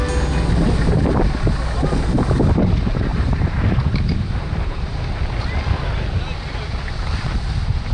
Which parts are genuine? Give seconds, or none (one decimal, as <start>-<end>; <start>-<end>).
0.0-3.1; 5.0-7.9